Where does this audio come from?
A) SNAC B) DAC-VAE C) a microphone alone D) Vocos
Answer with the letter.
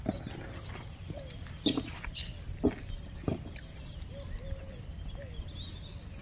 C